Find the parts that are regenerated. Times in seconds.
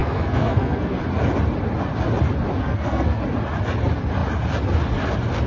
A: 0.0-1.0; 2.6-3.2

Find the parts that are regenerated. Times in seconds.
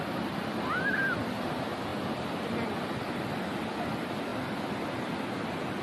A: none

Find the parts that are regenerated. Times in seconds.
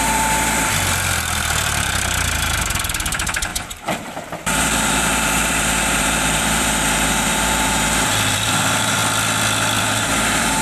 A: 0.0-9.0; 9.8-10.6